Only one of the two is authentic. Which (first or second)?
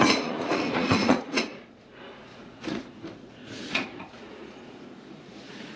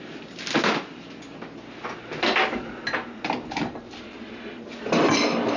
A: second